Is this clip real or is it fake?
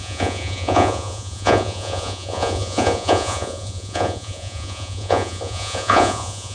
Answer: fake